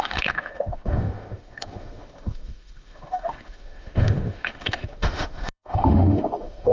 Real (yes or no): no